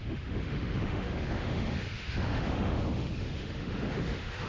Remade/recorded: remade